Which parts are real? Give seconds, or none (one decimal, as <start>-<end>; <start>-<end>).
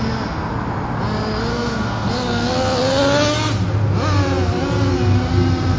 0.0-1.5; 2.1-5.8